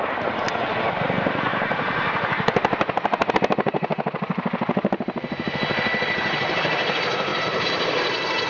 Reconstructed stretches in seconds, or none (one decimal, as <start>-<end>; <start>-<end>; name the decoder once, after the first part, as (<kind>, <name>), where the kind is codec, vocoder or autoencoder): 1.5-3.3 (vocoder, BigVGAN v2); 7.3-8.5